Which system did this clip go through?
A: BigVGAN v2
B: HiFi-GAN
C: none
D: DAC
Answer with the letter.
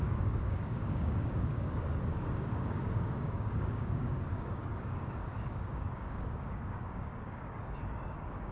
D